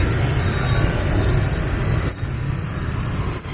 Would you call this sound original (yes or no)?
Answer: yes